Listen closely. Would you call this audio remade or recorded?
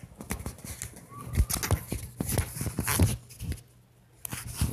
recorded